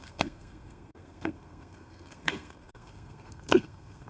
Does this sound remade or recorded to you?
remade